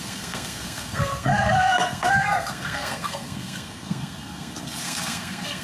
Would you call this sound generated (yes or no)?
yes